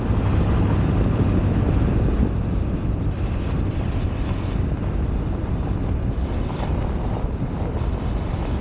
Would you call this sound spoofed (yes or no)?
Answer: yes